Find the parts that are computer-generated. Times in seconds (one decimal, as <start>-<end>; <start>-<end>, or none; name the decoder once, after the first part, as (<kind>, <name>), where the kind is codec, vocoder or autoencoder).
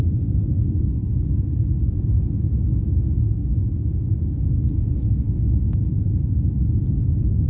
2.7-6.8 (autoencoder, DAC-VAE)